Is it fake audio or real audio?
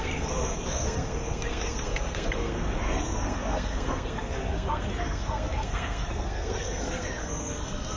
fake